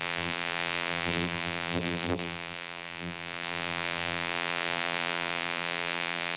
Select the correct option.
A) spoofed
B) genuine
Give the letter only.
A